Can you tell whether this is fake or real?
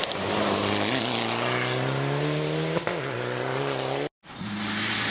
real